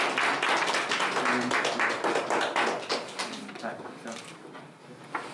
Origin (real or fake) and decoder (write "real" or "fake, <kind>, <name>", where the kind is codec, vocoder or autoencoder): real